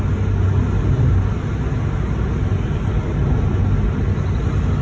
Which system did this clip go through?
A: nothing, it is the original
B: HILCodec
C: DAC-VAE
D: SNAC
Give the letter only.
A